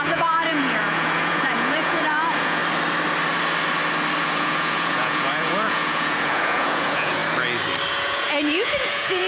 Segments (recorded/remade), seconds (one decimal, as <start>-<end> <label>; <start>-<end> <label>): 0.0-2.6 remade; 2.6-4.2 recorded; 4.2-7.2 remade; 7.2-7.9 recorded; 7.9-9.3 remade